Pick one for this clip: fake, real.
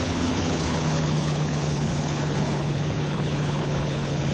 fake